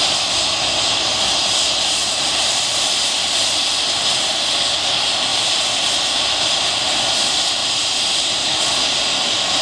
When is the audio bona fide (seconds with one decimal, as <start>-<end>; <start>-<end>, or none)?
0.0-2.0; 3.3-5.3; 6.6-7.6; 8.3-9.6